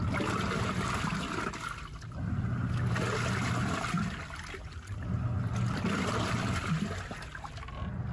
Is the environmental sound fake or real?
real